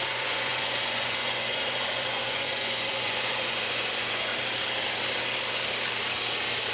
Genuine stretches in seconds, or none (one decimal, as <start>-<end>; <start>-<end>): 4.3-6.7